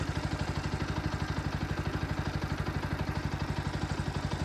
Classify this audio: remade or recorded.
recorded